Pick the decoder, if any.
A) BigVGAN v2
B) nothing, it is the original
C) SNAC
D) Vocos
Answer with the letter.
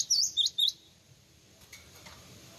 A